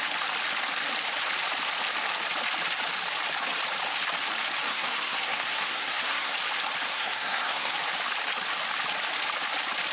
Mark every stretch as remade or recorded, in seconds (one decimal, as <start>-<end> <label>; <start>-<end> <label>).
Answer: 0.0-4.7 recorded; 4.7-6.3 remade; 6.3-6.9 recorded; 6.9-7.7 remade; 7.7-9.9 recorded